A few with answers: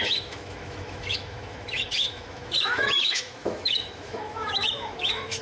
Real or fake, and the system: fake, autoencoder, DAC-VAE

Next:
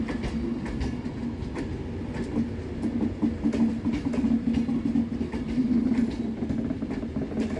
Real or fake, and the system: real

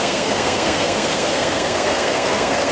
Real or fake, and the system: fake, codec, SNAC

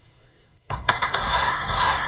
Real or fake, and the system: fake, codec, SNAC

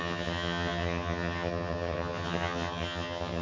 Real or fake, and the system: fake, vocoder, HiFi-GAN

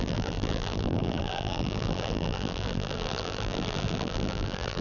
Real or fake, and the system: fake, vocoder, BigVGAN v2